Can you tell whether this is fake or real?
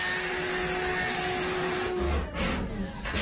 real